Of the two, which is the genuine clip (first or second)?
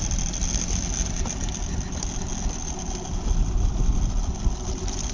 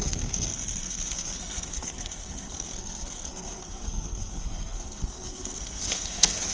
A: first